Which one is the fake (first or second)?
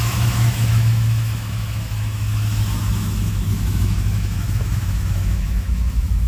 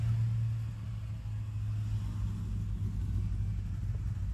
first